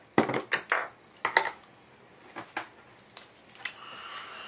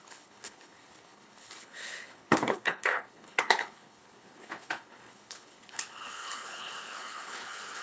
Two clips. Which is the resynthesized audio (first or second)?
second